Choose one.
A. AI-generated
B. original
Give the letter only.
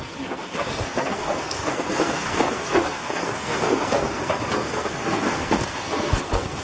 A